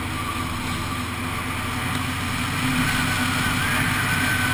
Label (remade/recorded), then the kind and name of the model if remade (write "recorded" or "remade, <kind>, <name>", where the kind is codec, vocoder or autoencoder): recorded